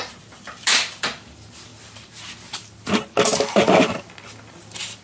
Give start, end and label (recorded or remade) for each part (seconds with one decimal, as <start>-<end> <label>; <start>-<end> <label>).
0.0-5.0 recorded